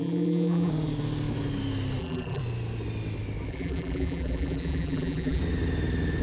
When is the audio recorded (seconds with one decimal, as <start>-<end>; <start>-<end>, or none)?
0.7-2.0; 2.4-3.5; 5.4-6.2